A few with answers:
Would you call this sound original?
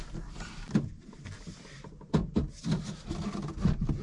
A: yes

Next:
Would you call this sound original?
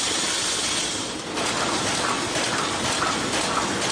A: yes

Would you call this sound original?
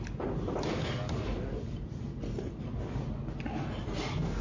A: yes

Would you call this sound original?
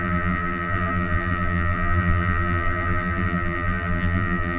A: no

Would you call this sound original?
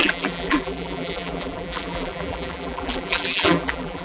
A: no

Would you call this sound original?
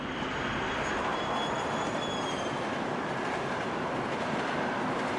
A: yes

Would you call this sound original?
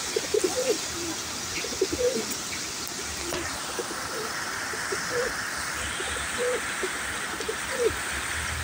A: yes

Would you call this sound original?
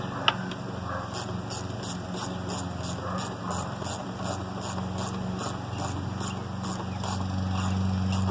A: yes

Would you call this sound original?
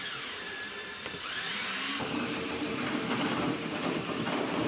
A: no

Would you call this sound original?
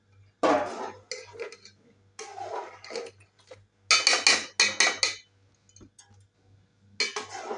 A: yes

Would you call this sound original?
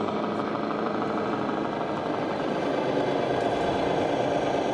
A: yes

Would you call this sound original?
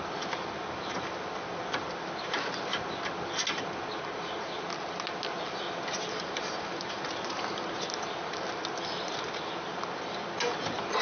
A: yes